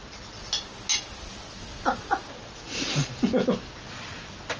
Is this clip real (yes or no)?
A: yes